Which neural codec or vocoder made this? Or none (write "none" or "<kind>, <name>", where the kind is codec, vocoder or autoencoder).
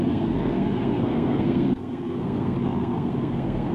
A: codec, SNAC